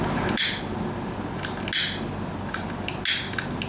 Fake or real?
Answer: real